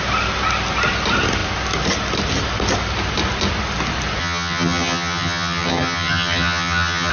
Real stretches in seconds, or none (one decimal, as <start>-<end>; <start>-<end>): 0.0-4.2